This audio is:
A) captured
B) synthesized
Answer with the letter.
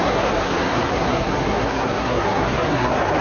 B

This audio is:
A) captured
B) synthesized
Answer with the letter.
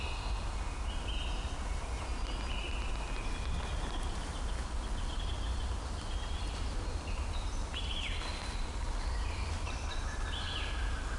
A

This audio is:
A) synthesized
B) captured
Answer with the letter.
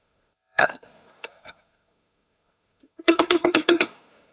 A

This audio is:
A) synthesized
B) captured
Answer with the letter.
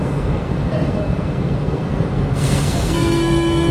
A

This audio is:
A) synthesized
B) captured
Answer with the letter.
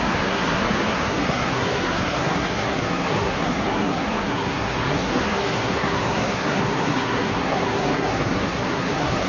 A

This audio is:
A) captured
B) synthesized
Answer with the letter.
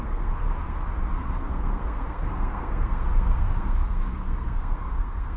B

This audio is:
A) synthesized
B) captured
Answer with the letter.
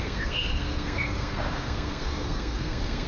A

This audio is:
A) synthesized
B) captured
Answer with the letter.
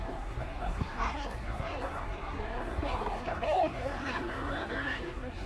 A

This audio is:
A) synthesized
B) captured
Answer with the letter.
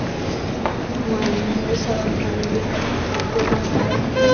B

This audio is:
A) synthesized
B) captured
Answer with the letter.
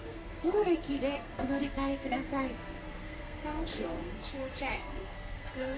A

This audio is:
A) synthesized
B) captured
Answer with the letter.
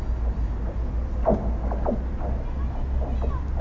B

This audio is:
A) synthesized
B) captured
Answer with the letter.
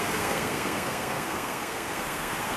A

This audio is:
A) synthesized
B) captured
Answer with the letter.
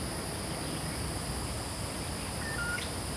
B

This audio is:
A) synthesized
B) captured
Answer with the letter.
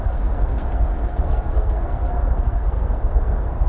A